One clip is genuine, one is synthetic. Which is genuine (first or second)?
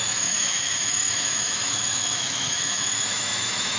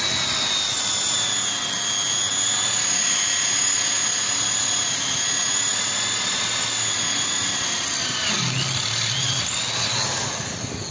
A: second